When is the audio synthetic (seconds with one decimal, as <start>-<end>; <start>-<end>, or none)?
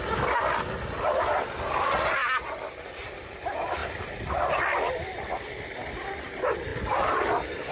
none